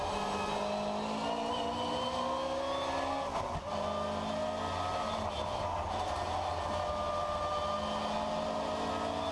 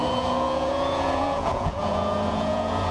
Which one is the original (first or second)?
first